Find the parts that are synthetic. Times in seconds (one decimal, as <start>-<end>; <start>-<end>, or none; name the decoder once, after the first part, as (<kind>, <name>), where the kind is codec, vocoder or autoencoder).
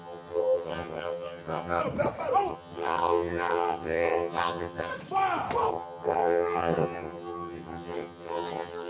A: 0.0-1.8 (vocoder, HiFi-GAN); 2.5-4.9; 5.7-8.9